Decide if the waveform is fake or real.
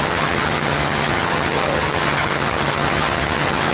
fake